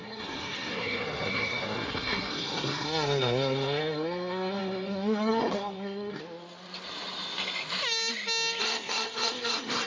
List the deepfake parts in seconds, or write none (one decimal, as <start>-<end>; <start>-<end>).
0.0-6.2; 8.6-9.9